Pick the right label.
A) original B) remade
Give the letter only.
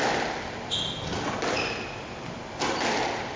A